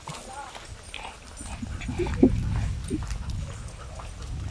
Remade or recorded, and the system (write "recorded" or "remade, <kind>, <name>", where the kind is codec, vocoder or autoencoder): recorded